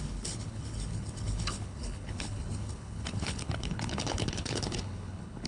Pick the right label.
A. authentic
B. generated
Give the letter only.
B